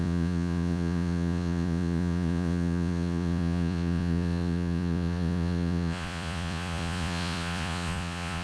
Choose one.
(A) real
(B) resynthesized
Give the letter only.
B